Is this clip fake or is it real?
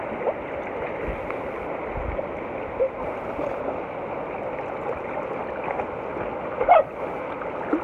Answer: real